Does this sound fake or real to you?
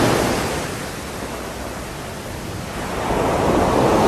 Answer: real